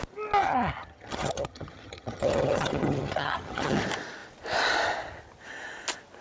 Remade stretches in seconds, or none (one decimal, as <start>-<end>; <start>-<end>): 0.4-3.8